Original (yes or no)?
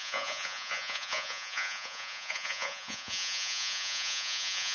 no